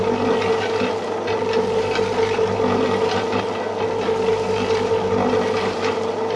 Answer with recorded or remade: recorded